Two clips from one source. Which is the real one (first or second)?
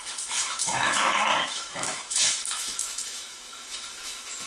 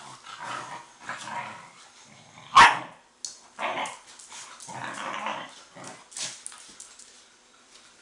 second